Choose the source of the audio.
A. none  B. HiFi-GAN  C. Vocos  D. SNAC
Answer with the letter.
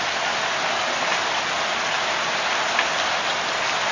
A